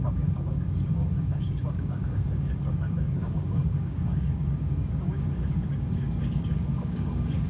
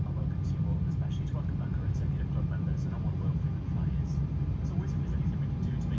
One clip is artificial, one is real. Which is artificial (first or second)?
first